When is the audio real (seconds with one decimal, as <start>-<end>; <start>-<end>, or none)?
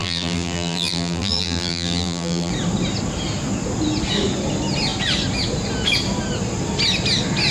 2.5-7.5